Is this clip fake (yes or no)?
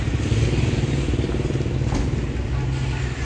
no